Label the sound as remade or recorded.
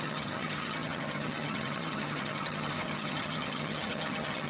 remade